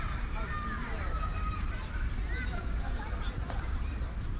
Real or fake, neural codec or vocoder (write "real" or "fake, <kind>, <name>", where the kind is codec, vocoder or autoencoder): fake, vocoder, BigVGAN v2